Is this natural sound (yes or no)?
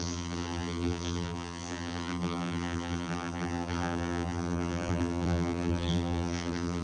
no